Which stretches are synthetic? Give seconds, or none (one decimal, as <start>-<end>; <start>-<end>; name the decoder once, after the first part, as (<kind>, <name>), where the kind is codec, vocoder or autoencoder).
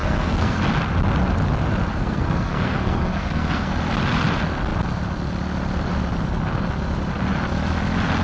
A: 0.0-0.6 (codec, SNAC); 1.9-3.7